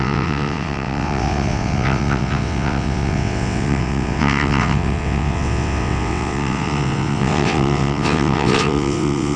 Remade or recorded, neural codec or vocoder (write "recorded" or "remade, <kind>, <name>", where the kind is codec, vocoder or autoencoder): remade, vocoder, WaveNeXt